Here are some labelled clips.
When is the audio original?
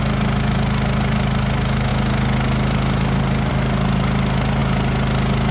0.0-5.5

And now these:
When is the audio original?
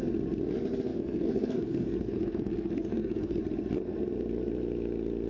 0.0-0.9; 3.4-5.3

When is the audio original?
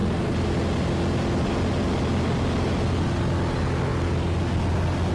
0.0-5.1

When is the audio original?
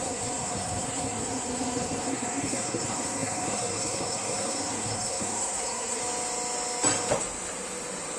6.0-8.2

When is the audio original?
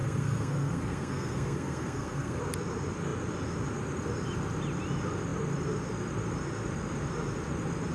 2.4-7.9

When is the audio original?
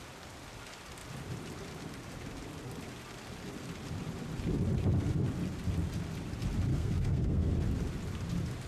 0.0-6.7; 7.5-8.7